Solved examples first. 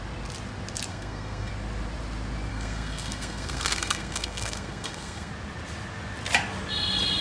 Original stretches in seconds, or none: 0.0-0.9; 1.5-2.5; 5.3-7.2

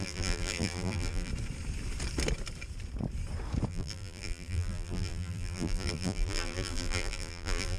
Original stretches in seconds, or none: 1.3-3.7

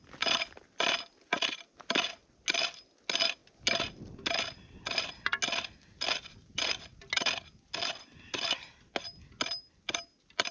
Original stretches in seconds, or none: 0.0-10.5

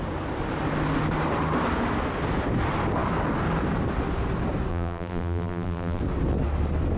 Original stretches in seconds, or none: 0.0-4.7; 6.0-7.0

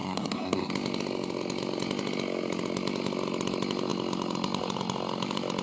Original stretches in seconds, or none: 0.7-5.6

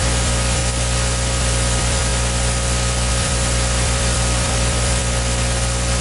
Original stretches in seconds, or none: 0.6-1.4; 2.1-3.1; 5.0-6.0